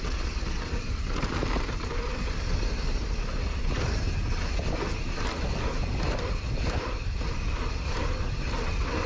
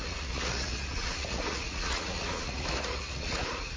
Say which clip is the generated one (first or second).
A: second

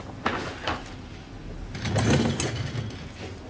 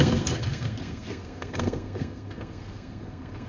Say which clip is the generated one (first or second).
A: second